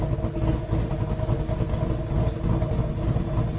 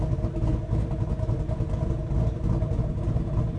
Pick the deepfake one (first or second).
second